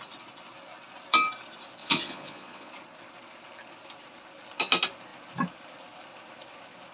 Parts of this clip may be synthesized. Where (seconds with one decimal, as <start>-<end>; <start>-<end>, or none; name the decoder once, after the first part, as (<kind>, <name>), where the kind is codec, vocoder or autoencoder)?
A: 1.8-2.7 (vocoder, Vocos)